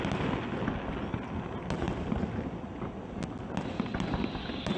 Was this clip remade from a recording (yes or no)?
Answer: no